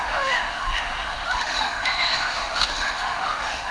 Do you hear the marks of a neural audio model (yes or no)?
yes